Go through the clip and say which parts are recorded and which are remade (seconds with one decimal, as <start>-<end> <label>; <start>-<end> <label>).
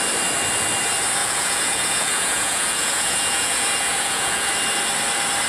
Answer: 0.0-1.2 recorded; 1.2-4.5 remade; 4.5-5.5 recorded